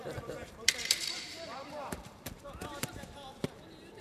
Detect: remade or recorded remade